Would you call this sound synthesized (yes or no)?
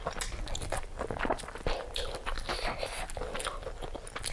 no